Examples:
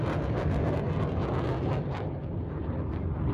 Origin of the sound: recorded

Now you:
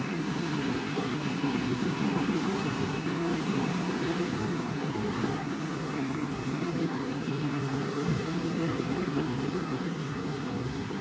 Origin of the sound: remade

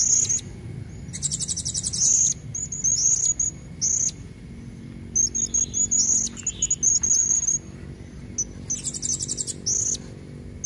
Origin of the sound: recorded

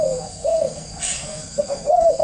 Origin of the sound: remade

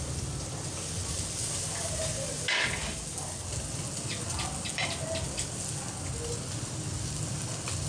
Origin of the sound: recorded